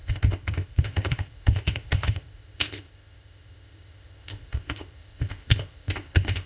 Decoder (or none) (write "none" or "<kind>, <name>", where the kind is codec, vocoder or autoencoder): codec, ZipCodec